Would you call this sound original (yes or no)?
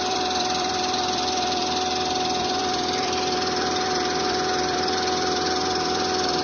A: no